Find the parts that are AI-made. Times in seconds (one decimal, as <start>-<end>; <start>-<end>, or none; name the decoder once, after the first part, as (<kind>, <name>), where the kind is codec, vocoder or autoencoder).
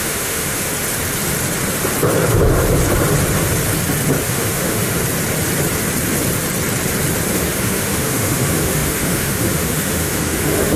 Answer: 0.0-0.7 (autoencoder, DAC-VAE); 4.3-5.0; 7.3-10.8